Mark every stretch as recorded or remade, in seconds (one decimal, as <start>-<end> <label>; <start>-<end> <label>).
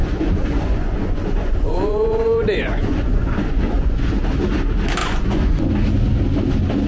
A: 0.0-4.1 remade; 4.1-5.0 recorded; 5.0-5.7 remade; 5.7-6.9 recorded